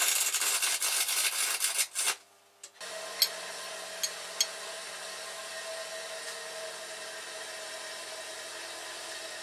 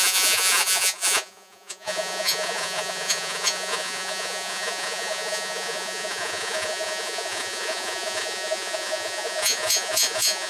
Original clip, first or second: first